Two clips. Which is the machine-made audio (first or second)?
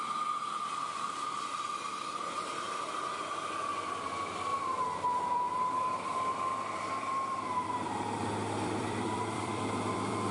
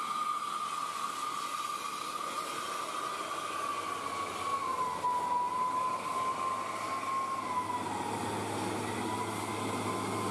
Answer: first